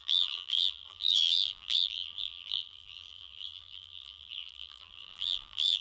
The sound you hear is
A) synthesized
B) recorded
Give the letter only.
A